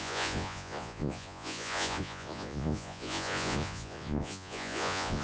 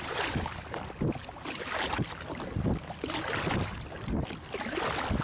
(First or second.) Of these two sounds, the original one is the second